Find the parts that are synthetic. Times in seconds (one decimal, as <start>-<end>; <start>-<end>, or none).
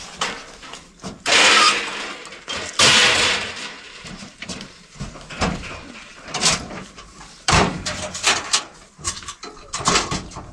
2.2-4.7; 6.1-9.3